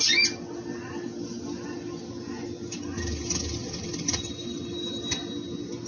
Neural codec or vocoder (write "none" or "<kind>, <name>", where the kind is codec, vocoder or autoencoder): none